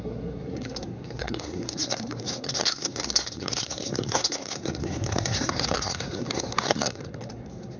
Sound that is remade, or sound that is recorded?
remade